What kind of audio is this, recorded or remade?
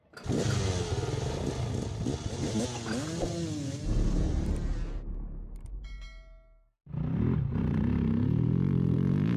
recorded